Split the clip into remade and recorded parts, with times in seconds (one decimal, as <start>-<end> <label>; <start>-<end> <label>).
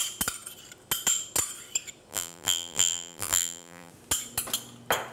0.0-2.1 recorded; 2.1-3.9 remade; 3.9-5.1 recorded